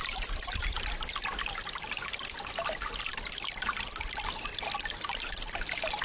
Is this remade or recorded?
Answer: recorded